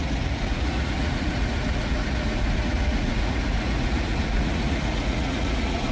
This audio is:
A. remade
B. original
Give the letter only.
A